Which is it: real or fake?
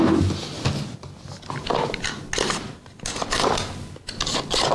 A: real